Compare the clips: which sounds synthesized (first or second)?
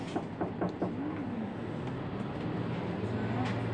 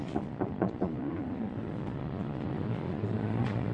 second